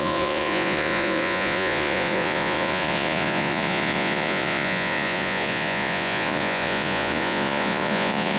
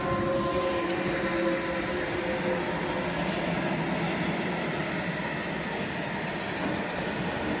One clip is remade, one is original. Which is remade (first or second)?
first